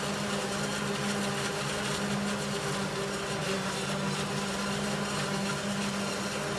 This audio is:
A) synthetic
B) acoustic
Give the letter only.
B